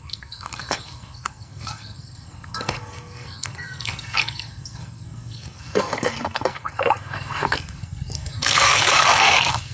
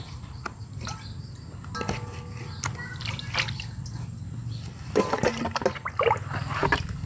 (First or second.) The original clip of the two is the second